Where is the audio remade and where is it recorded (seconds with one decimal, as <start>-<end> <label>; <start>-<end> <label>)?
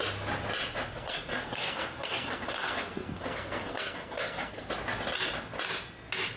0.0-0.9 recorded; 0.9-4.7 remade; 4.7-6.4 recorded